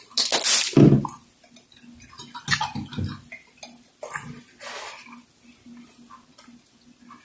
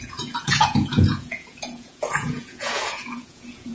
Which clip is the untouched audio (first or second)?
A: first